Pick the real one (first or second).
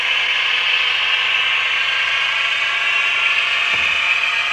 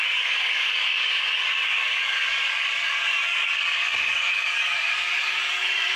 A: first